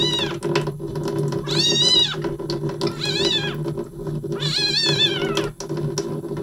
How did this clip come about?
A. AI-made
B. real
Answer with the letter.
B